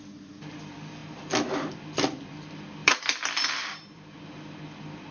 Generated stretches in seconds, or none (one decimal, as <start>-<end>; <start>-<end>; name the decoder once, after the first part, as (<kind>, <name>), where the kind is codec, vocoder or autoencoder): 1.0-2.3 (vocoder, BigVGAN v2); 2.8-4.2